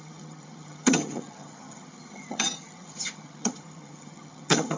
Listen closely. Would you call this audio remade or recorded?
remade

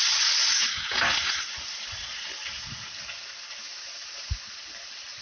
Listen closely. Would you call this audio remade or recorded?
recorded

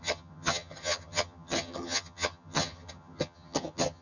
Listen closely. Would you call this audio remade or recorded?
remade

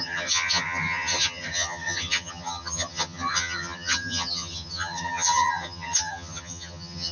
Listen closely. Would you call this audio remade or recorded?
remade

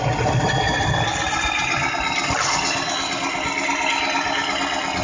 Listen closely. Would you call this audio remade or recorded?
recorded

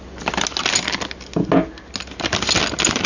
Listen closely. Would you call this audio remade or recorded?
recorded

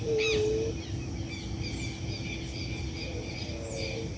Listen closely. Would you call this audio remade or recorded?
recorded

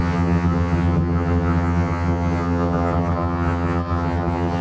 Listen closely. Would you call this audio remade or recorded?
remade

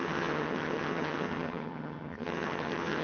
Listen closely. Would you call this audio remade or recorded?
remade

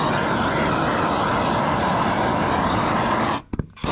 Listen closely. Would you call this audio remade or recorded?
recorded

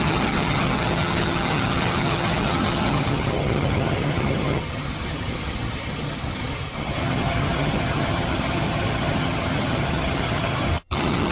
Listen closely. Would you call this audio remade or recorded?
remade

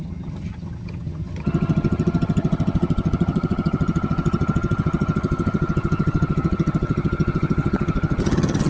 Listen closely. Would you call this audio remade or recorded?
remade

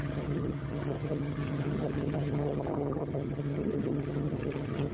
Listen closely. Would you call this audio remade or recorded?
remade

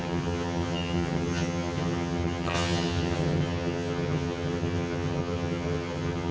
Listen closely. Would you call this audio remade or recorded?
remade